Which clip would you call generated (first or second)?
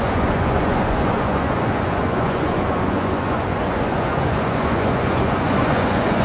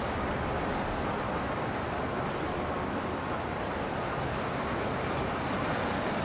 first